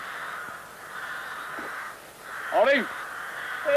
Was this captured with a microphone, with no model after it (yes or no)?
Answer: yes